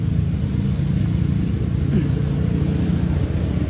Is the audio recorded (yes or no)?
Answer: yes